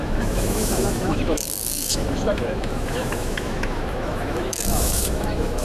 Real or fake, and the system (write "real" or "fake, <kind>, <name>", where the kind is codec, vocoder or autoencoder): fake, autoencoder, DAC-VAE